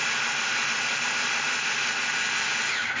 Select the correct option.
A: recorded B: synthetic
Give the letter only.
A